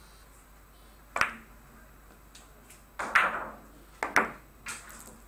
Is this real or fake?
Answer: real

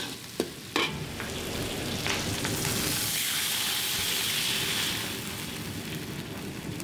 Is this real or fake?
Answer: real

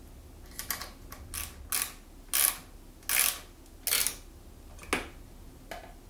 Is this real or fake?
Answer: real